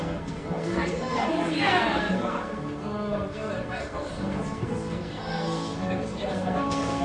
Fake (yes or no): yes